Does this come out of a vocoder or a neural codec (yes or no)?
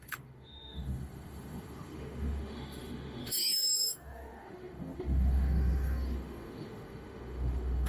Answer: yes